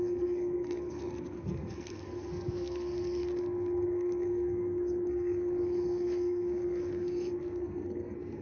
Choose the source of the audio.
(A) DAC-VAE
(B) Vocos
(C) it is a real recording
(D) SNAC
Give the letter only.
D